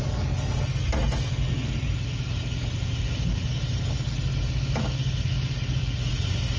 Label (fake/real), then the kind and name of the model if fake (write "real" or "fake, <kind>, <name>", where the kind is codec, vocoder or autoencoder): real